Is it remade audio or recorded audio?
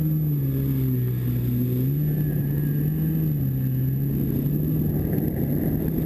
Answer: recorded